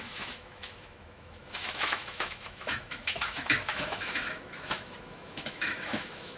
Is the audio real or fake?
fake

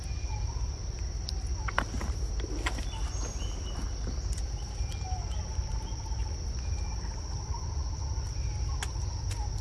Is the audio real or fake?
real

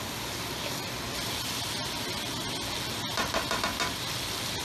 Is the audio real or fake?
real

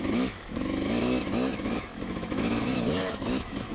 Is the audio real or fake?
fake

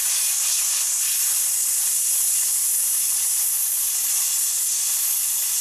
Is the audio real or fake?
real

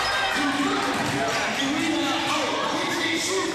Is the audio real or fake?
real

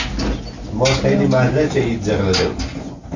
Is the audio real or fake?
real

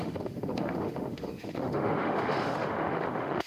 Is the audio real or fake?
fake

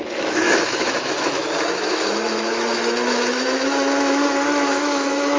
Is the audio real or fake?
fake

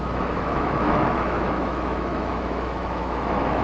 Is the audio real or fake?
fake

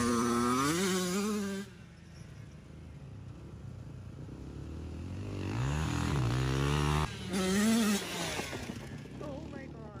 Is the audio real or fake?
real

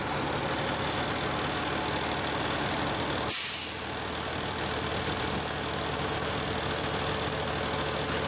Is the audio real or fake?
real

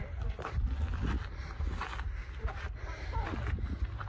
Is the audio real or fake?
real